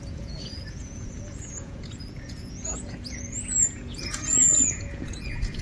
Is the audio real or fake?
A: fake